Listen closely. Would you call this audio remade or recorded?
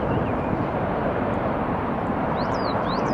remade